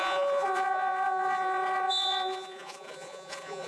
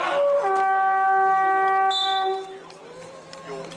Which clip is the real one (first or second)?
second